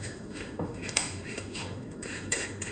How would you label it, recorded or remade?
remade